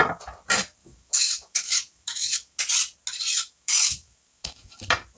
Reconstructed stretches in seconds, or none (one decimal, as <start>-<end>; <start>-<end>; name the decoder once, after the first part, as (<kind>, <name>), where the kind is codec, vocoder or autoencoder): 0.8-2.6 (autoencoder, DAC-VAE); 3.4-4.8